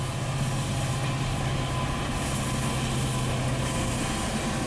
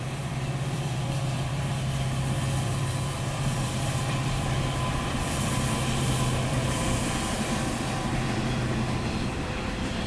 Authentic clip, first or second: first